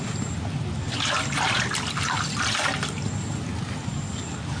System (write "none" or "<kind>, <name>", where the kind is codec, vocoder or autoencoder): none